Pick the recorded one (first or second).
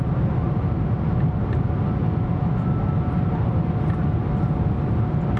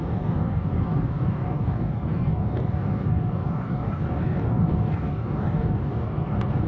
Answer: first